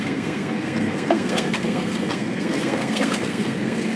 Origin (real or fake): fake